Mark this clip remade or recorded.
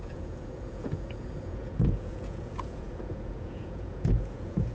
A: remade